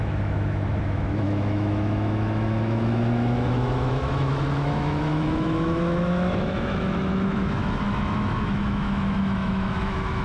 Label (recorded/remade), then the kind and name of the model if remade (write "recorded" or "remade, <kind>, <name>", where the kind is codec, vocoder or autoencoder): remade, autoencoder, DAC-VAE